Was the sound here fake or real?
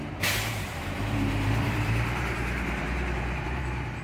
fake